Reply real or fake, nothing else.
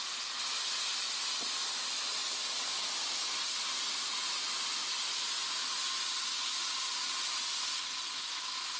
real